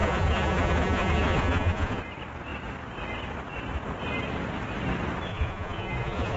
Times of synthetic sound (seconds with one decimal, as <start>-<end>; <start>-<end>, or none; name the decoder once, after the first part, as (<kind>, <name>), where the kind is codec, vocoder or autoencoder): 0.0-2.0 (vocoder, Vocos); 5.3-6.4